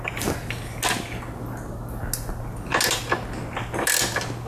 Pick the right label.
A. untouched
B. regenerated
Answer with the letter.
A